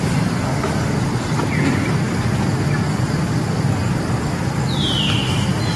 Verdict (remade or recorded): recorded